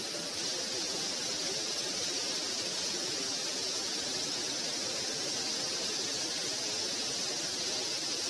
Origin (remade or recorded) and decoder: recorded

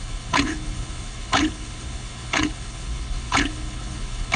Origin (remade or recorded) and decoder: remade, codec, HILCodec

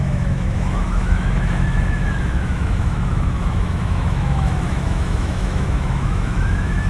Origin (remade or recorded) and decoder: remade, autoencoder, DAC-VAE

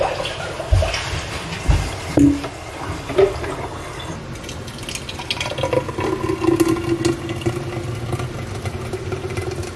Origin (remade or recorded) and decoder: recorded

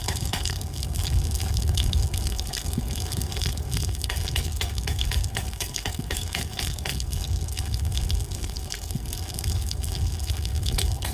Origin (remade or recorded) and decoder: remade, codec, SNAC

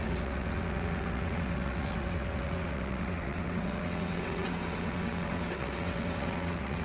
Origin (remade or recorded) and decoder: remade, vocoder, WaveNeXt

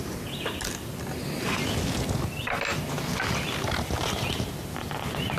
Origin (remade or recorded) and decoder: recorded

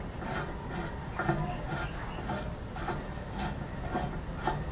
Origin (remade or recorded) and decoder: recorded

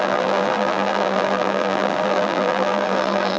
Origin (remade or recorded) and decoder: remade, vocoder, BigVGAN v2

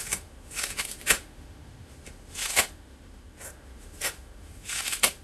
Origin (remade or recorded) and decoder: remade, autoencoder, DAC-VAE